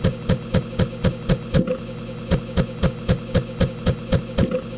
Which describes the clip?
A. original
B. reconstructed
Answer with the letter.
A